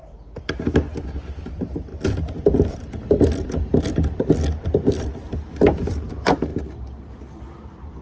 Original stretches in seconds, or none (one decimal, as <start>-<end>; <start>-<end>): 0.0-1.5; 1.9-2.7; 5.3-5.9